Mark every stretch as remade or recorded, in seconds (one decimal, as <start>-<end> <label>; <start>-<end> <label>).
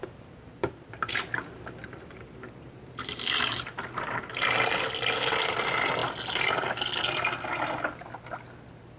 0.0-4.3 remade; 4.3-9.0 recorded